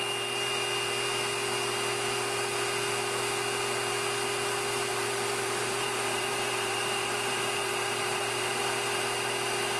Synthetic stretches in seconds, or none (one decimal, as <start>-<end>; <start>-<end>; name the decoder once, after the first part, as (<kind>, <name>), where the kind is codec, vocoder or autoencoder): 4.9-8.6 (vocoder, BigVGAN v2)